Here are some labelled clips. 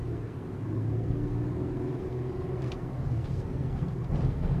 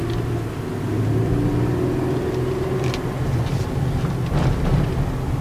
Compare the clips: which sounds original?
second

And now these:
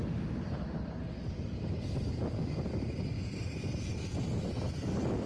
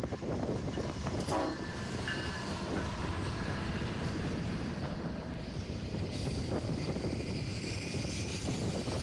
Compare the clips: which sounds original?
first